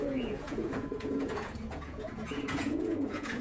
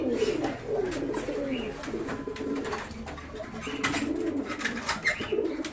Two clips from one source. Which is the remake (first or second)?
first